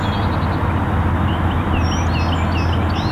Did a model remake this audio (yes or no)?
no